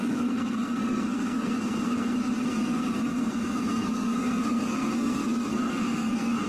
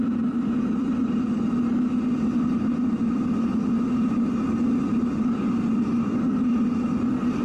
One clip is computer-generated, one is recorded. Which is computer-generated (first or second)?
first